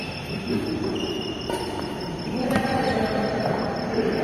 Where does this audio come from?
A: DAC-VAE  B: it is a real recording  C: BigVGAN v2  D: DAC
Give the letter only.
B